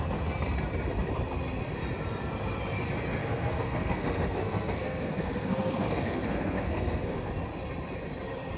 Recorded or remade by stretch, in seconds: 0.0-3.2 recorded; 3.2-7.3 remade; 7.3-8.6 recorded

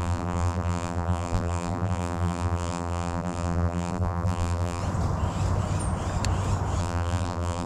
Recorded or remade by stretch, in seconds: 0.0-4.8 remade; 4.8-6.8 recorded; 6.8-7.7 remade

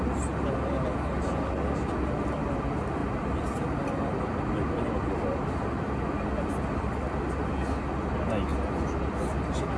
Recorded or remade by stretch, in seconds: 0.0-9.8 recorded

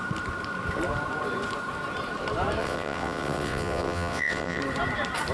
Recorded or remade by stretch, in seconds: 0.0-2.6 recorded; 2.6-4.6 remade; 4.6-5.3 recorded

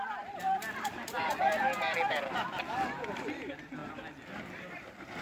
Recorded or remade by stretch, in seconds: 0.0-1.3 remade; 1.3-3.1 recorded; 3.1-3.8 remade; 3.8-4.7 recorded; 4.7-5.2 remade

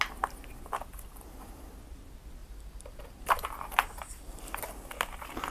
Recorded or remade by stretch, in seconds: 0.0-2.4 recorded; 2.4-4.7 remade; 4.7-5.5 recorded

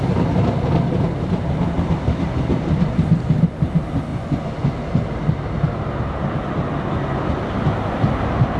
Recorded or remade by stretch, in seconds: 0.0-4.1 recorded; 4.1-4.8 remade; 4.8-8.6 recorded

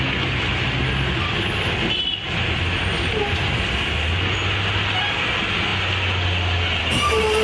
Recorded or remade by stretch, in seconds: 0.0-7.4 recorded